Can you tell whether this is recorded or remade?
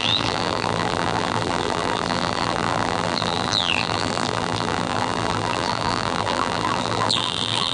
remade